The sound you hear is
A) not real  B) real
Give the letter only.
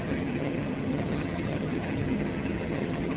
A